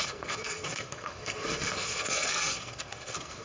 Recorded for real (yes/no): no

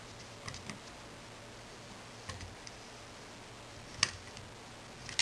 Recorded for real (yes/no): yes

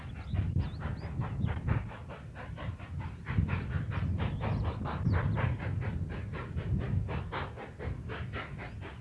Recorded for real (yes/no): yes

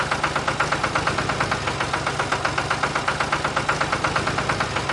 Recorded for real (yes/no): yes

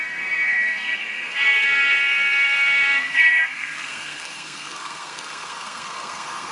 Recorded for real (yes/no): no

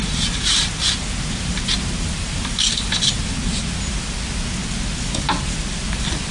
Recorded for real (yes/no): yes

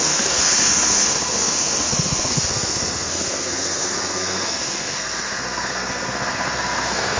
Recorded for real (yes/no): no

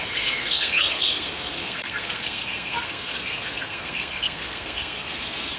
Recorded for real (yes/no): no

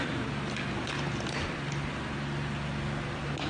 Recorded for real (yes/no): yes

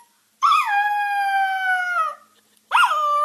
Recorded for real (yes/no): yes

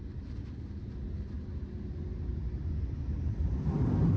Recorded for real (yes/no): yes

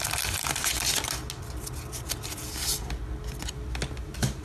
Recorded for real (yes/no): yes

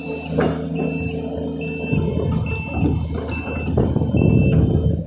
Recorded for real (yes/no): yes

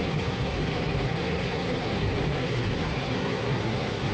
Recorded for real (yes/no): no